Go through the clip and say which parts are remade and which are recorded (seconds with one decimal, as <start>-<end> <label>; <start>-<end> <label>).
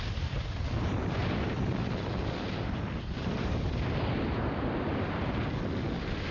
0.0-1.2 recorded; 1.2-5.0 remade; 5.0-6.3 recorded